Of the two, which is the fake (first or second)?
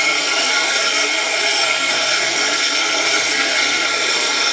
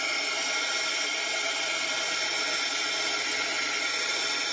first